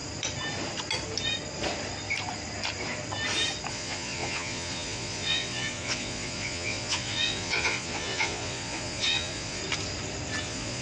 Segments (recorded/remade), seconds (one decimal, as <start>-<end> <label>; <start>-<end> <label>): 0.0-3.7 recorded; 3.7-9.6 remade; 9.6-10.4 recorded; 10.4-10.8 remade